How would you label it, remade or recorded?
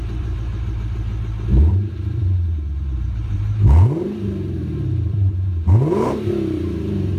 remade